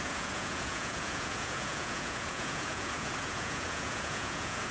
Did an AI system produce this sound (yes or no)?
yes